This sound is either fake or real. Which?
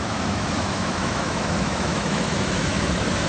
fake